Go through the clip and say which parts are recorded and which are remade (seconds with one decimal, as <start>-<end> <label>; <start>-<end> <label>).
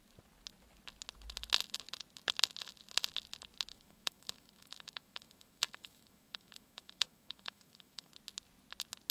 0.0-3.7 recorded; 3.7-8.1 remade; 8.1-9.1 recorded